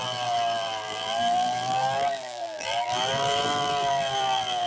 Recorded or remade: remade